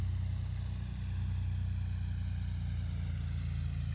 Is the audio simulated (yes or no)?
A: no